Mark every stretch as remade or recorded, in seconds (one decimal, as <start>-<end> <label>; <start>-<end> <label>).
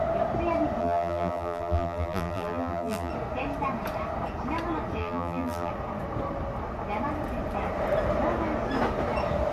0.0-0.8 recorded; 0.8-3.1 remade; 3.1-5.0 recorded; 5.0-5.7 remade; 5.7-9.5 recorded